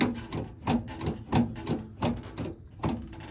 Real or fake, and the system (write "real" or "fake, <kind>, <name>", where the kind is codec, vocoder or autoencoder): real